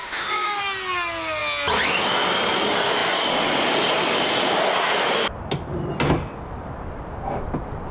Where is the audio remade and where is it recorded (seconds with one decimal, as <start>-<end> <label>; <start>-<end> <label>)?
0.0-0.6 remade; 0.6-7.9 recorded